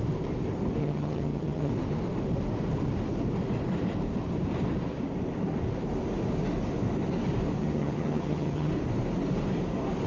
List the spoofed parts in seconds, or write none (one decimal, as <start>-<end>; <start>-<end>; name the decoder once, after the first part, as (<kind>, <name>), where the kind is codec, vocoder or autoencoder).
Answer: 0.8-1.7 (vocoder, HiFi-GAN); 7.6-8.7